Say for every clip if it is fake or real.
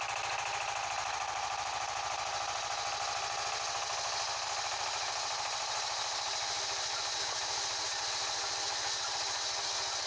real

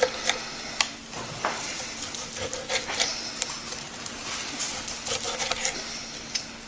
real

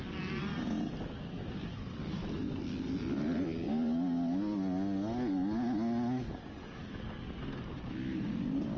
real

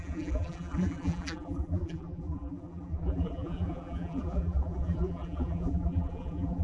fake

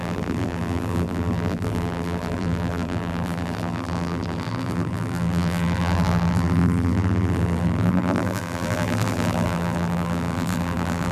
fake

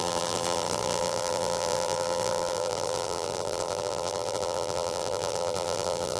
fake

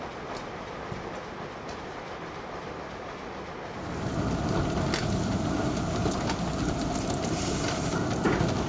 real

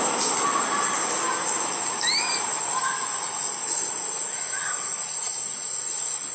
real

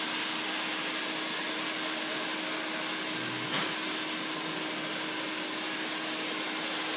real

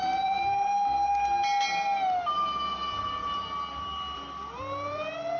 real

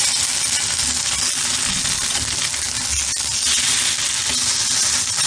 real